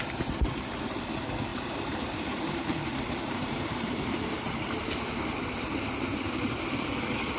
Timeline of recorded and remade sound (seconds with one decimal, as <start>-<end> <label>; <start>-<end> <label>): 0.0-1.5 recorded; 1.5-4.8 remade; 4.8-7.4 recorded